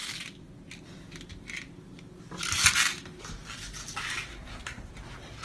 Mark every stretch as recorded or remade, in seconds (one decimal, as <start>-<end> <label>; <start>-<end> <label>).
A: 0.0-4.3 recorded; 4.3-4.9 remade; 4.9-5.4 recorded